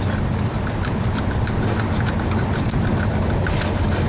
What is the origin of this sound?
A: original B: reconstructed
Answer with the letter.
A